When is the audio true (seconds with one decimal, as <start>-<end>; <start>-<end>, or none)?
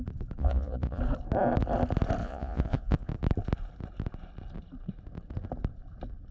0.0-0.4; 1.0-2.2; 3.1-6.3